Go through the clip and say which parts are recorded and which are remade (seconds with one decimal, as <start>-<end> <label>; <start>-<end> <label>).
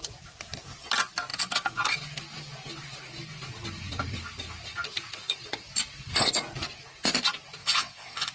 0.0-7.6 recorded; 7.6-8.3 remade